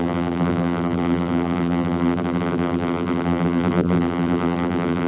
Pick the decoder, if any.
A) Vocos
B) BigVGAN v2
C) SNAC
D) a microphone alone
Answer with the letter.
B